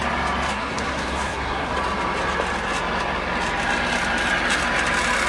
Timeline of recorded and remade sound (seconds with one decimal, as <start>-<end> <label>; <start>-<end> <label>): 0.0-0.5 recorded; 0.5-1.7 remade; 1.7-5.3 recorded